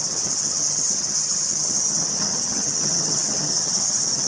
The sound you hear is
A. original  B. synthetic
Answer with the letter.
B